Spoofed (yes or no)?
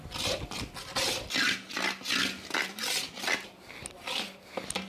no